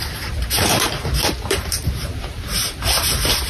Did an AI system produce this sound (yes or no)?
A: yes